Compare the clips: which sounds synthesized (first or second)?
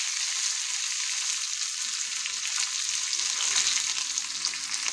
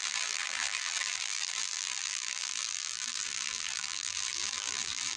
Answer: second